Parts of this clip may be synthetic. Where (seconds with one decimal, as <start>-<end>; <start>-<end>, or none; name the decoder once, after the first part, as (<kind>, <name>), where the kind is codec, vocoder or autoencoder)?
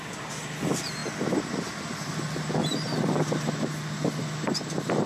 none